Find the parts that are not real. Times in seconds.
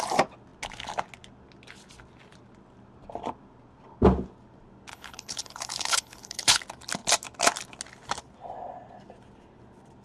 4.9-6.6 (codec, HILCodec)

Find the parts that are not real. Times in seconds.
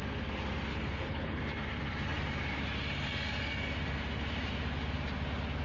0.7-1.4 (codec, HILCodec)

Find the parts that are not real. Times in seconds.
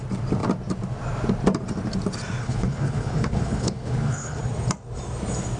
2.4-4.4 (codec, HILCodec)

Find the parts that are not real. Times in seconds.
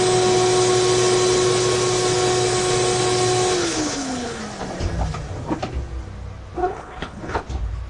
3.6-4.4 (codec, HILCodec); 6.6-7.4